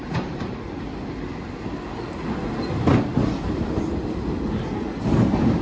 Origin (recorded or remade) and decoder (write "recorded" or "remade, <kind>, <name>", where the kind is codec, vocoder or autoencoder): recorded